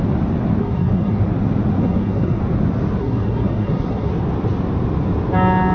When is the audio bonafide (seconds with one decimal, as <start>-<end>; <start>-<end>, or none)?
0.0-0.6; 1.2-1.8; 2.4-3.0; 4.1-5.7